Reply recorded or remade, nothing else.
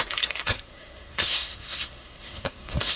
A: remade